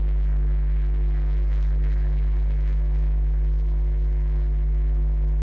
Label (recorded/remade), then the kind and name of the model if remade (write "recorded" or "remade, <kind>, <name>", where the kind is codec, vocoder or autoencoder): remade, codec, SNAC